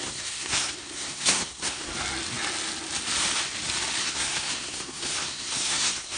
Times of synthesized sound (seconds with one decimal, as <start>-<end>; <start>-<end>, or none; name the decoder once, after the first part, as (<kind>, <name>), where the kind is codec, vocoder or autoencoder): 0.0-1.9 (codec, SNAC); 4.0-6.2